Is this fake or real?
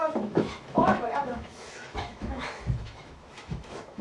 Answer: fake